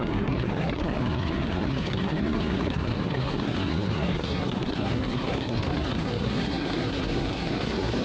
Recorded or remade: remade